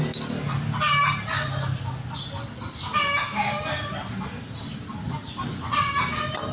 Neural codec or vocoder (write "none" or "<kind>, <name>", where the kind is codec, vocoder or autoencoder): none